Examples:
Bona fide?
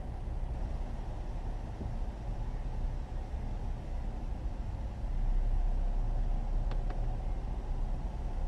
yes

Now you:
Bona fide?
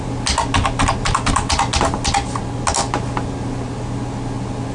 yes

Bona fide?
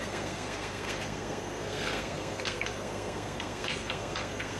no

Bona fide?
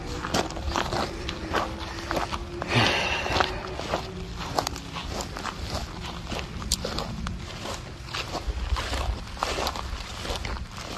yes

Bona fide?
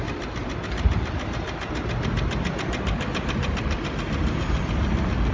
yes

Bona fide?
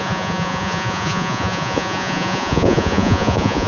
no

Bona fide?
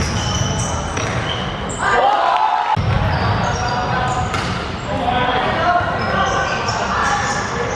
yes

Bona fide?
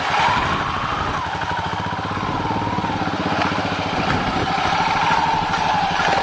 yes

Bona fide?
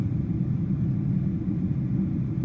yes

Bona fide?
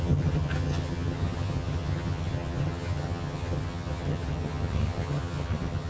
no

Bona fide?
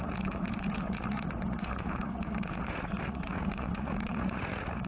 no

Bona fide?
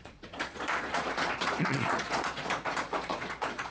no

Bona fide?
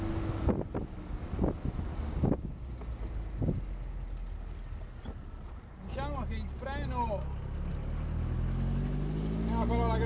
yes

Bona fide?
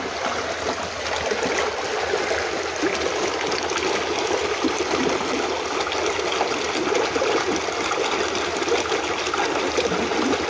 yes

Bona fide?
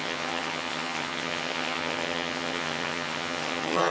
no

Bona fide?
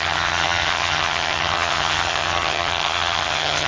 no